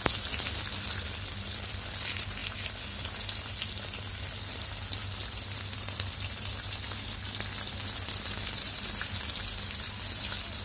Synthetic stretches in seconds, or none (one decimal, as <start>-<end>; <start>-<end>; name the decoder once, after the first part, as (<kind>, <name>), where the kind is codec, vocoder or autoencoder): none

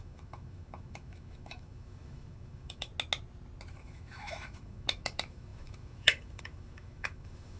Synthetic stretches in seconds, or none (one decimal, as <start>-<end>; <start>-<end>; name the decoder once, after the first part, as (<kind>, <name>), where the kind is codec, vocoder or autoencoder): 0.0-2.9 (autoencoder, DAC-VAE); 3.7-7.6

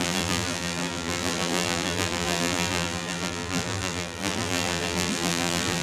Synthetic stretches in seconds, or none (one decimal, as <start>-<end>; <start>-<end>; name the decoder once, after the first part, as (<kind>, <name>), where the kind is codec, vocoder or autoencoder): 0.0-5.8 (vocoder, BigVGAN v2)

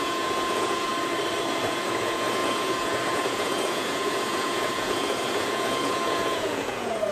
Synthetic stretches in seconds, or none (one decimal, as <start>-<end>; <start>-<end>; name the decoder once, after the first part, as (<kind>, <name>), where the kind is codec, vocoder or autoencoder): 0.0-0.9 (vocoder, Vocos); 1.5-7.1

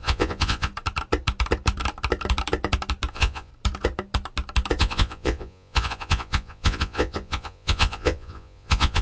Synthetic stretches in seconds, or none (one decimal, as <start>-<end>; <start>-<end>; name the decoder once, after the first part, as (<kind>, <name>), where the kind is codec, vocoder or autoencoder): 0.0-0.7 (vocoder, Vocos); 3.1-3.5; 4.8-9.0

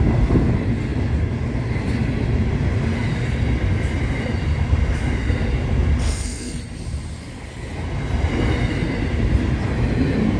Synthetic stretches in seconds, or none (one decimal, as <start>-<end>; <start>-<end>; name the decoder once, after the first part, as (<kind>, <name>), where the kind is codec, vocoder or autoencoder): 6.0-6.6 (codec, SNAC)